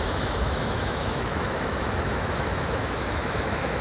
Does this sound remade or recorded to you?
remade